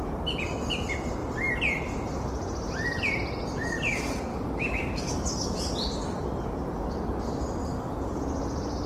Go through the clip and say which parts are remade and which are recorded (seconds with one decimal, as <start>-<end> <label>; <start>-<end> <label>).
0.0-4.3 recorded; 4.3-5.6 remade; 5.6-7.7 recorded; 7.7-8.2 remade; 8.2-8.9 recorded